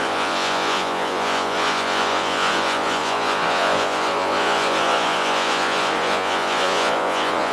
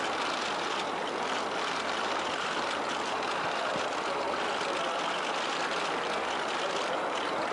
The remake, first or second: first